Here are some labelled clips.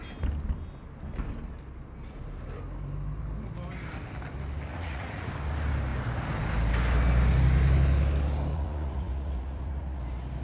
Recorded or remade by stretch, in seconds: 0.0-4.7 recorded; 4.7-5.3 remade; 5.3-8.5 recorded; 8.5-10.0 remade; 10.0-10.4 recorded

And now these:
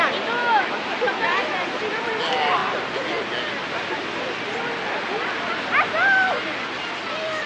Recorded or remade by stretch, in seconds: 0.0-0.4 recorded; 0.4-1.0 remade; 1.0-7.5 recorded

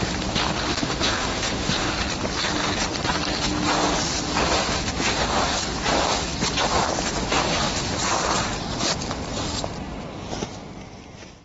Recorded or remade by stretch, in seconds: 0.0-0.7 recorded; 0.7-1.9 remade; 1.9-11.4 recorded

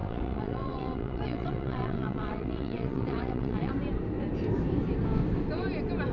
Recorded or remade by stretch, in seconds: 0.0-3.7 remade; 3.7-6.1 recorded

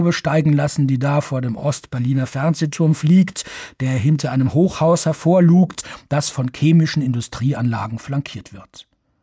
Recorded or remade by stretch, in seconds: 0.0-1.6 recorded; 1.6-5.8 remade; 5.8-9.2 recorded